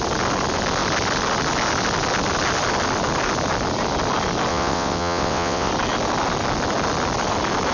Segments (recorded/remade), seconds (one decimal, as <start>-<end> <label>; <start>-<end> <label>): 0.0-4.5 recorded; 4.5-5.7 remade; 5.7-7.7 recorded